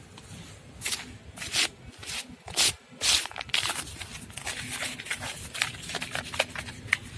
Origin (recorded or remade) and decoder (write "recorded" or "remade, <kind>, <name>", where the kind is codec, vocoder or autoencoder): recorded